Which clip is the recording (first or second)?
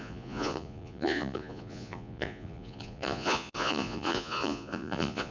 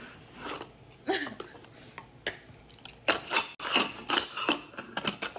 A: second